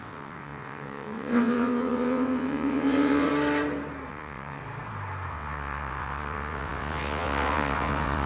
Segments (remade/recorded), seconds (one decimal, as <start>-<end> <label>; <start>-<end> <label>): 0.0-3.3 remade; 3.3-4.1 recorded; 4.1-4.6 remade; 4.6-5.3 recorded; 5.3-8.3 remade